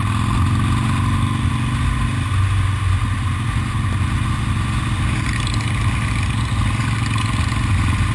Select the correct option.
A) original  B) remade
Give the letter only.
A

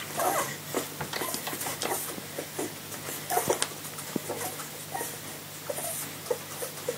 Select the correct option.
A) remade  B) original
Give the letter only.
B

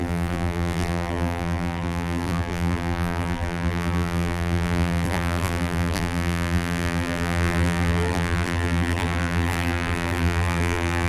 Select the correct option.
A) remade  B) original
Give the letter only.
A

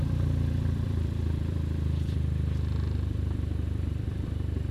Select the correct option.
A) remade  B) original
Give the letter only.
A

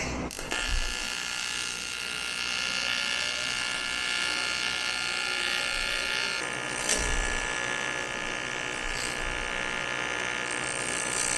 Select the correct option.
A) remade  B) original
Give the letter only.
B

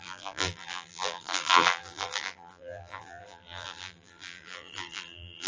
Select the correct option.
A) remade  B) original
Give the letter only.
A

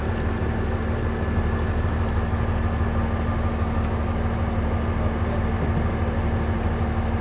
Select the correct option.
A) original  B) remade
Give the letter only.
A